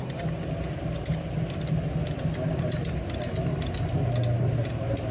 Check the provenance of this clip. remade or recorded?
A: recorded